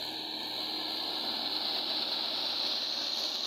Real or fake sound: real